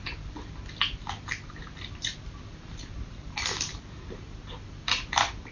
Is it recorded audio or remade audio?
recorded